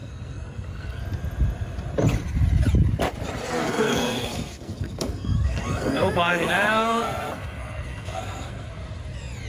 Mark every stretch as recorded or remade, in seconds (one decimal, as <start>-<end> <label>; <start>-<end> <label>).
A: 0.0-1.0 remade; 1.0-3.6 recorded; 3.6-8.7 remade; 8.7-9.5 recorded

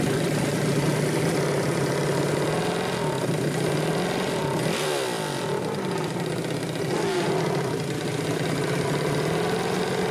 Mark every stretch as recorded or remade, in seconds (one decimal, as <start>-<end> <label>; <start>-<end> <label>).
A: 0.0-10.1 recorded

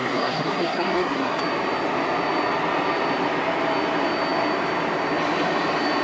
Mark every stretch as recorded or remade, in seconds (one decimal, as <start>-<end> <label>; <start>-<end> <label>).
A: 0.0-1.4 remade; 1.4-6.0 recorded

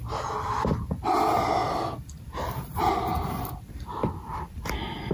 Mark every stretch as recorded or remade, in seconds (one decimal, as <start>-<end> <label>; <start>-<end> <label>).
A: 0.0-1.6 recorded; 1.6-5.1 remade

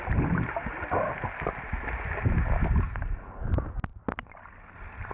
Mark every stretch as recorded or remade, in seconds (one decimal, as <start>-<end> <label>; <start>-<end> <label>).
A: 0.0-5.1 recorded